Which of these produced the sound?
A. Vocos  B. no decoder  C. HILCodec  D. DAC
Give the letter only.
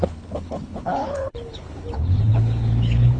C